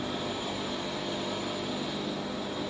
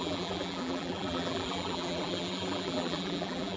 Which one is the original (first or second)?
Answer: first